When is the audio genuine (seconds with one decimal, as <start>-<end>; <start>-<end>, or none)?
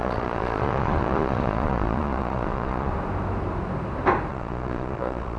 2.9-4.3